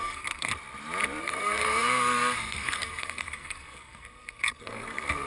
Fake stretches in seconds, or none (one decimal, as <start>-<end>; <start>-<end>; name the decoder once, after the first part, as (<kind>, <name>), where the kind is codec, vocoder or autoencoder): 0.0-0.5 (codec, SNAC); 1.2-5.3